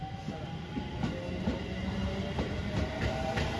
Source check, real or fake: real